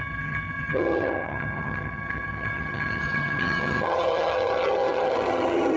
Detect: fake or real fake